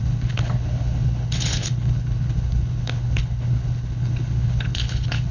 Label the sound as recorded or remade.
remade